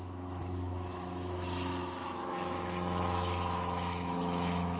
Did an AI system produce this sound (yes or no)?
yes